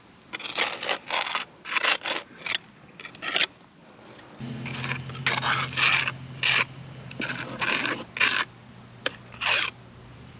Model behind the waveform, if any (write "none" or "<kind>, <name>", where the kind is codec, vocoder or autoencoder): none